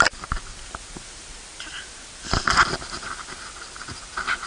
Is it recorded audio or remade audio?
recorded